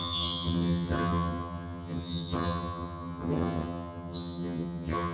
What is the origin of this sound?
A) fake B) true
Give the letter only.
A